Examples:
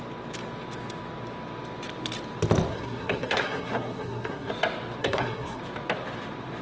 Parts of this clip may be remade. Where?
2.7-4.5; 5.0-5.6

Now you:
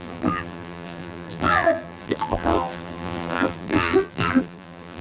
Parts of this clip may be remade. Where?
0.0-5.0

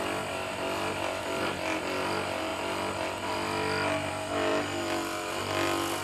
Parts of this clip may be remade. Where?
none

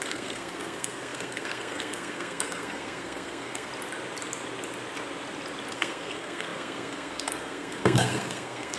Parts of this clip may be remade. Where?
0.0-3.7; 5.7-8.8

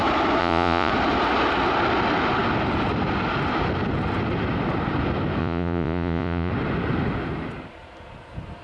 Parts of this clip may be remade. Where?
0.4-0.9; 5.4-6.5

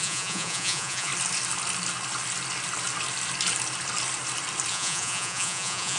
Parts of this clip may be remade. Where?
0.0-1.1; 4.7-6.0

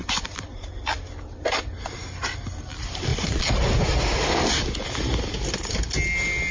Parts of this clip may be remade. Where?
0.0-1.1